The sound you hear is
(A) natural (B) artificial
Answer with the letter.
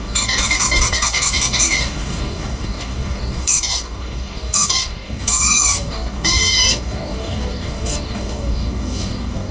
B